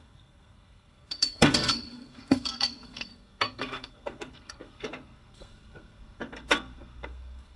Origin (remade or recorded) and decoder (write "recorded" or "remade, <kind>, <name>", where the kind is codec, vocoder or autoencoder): remade, codec, SNAC